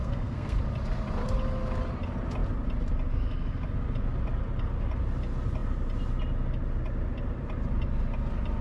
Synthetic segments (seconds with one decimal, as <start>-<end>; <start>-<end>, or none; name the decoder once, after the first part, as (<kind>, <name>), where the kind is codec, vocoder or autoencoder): 0.0-0.6 (codec, SNAC)